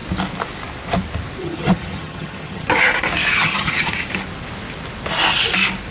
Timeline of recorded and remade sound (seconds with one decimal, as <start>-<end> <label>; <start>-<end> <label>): 0.0-1.4 recorded; 1.4-2.7 remade; 2.7-3.3 recorded; 3.3-3.9 remade; 3.9-5.9 recorded